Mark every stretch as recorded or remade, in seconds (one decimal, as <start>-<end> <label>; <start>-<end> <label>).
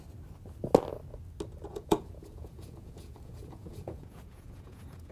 0.0-1.7 recorded; 1.7-5.1 remade